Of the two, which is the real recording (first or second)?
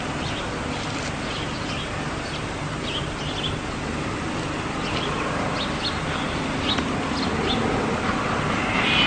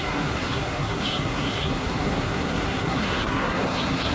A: first